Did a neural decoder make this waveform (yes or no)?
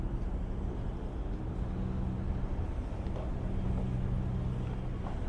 no